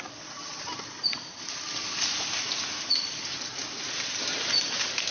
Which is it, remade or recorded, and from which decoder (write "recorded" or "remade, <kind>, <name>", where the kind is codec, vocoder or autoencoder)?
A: recorded